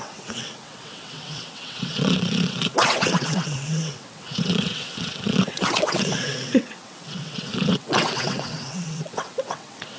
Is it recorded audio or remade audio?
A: remade